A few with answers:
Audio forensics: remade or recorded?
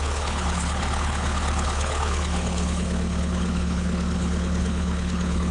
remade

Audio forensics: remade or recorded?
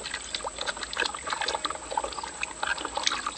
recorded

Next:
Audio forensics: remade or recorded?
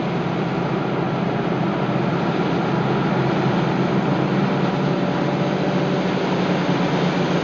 recorded